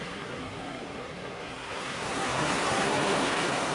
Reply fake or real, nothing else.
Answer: fake